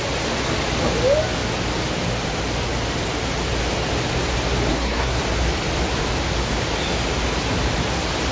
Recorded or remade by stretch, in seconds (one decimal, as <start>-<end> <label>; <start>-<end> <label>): 0.0-4.7 recorded; 4.7-5.2 remade; 5.2-8.3 recorded